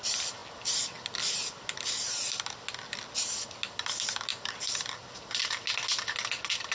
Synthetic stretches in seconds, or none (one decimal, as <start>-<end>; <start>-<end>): 4.3-5.4